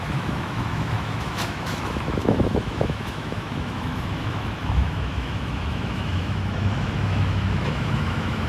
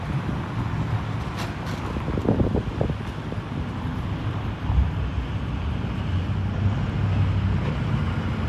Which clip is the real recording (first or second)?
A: second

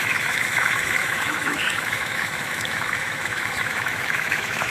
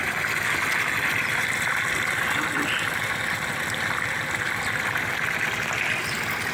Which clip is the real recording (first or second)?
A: second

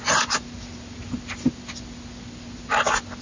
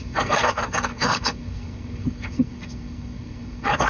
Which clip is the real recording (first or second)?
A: first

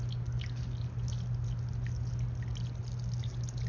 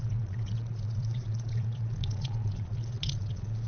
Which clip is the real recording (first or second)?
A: first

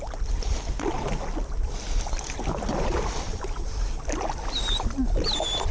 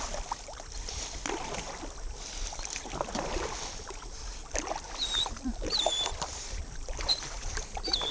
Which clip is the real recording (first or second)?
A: first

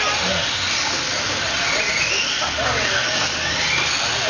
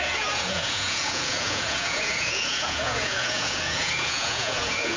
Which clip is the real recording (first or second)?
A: first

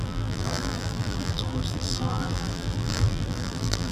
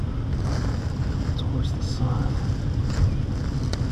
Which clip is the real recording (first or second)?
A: second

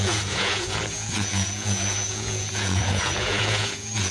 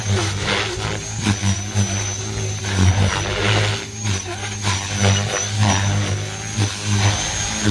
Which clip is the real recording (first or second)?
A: second